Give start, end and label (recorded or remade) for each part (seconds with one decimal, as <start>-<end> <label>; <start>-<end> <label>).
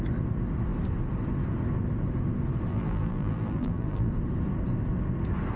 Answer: 0.0-2.7 recorded; 2.7-4.1 remade; 4.1-5.6 recorded